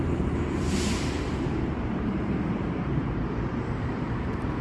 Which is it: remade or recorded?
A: remade